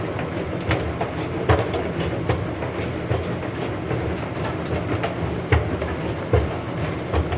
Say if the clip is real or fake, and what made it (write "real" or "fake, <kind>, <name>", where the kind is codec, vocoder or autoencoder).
real